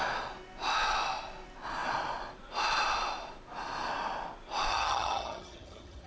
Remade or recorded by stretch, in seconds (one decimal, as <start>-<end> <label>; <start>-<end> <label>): 0.0-4.7 recorded; 4.7-6.1 remade